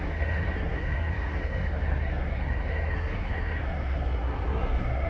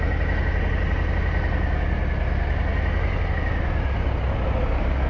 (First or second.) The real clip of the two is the second